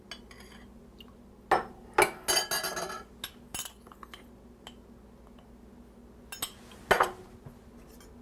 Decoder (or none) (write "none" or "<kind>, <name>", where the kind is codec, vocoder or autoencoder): none